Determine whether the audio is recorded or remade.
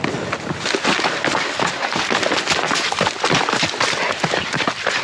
recorded